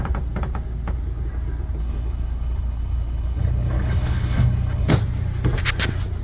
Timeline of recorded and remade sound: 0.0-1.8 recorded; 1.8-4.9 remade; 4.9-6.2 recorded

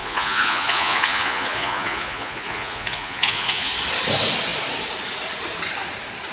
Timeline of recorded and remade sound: 0.0-3.7 remade; 3.7-6.3 recorded

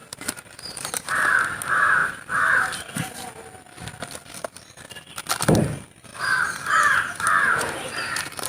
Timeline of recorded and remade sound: 0.0-1.1 remade; 1.1-2.0 recorded; 2.0-3.3 remade; 3.3-6.1 recorded; 6.1-7.9 remade; 7.9-8.5 recorded

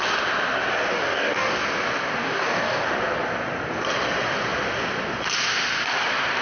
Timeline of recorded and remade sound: 0.0-0.9 recorded; 0.9-1.6 remade; 1.6-2.2 recorded; 2.2-2.9 remade; 2.9-6.4 recorded